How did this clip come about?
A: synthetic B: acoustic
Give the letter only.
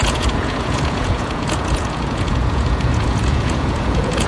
A